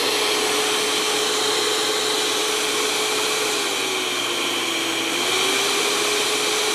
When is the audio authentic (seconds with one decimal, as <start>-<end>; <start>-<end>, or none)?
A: 0.0-6.7